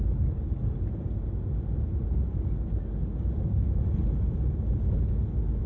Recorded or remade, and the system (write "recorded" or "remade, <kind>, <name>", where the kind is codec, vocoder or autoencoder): recorded